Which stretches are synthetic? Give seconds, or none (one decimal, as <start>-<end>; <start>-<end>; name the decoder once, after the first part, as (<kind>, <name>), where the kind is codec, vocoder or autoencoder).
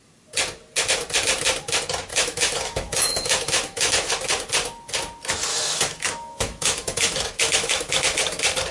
2.1-4.1 (autoencoder, DAC-VAE); 5.5-7.9